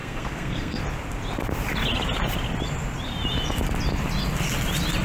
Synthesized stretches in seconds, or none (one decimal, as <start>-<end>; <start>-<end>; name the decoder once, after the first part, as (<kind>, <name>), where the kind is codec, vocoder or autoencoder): 0.0-0.8 (codec, SNAC)